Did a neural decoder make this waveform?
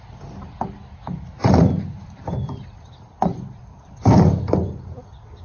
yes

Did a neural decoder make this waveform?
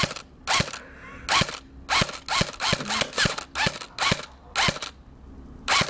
no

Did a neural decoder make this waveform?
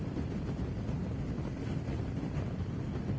no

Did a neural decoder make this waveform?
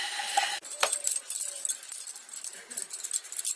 no